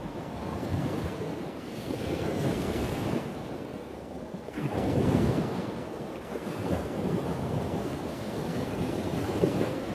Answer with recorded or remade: remade